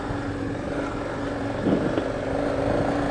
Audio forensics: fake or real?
real